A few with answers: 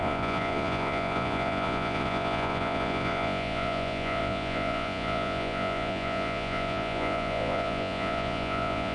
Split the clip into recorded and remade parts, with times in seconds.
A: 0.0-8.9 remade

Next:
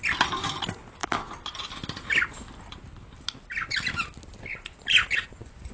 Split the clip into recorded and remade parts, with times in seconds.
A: 0.0-4.5 recorded; 4.5-5.7 remade

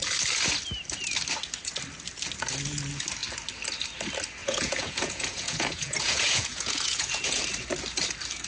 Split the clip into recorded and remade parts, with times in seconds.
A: 0.0-4.4 recorded; 4.4-7.4 remade; 7.4-8.5 recorded

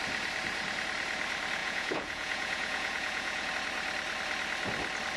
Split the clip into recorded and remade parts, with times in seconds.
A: 0.0-1.6 recorded; 1.6-3.5 remade; 3.5-5.2 recorded

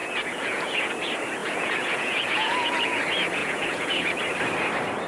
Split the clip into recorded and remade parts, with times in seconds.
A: 0.0-0.9 remade; 0.9-1.4 recorded; 1.4-3.0 remade; 3.0-3.4 recorded; 3.4-4.2 remade; 4.2-5.1 recorded